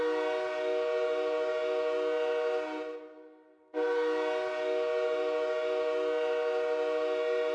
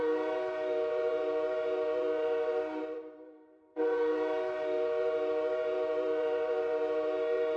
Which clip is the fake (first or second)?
second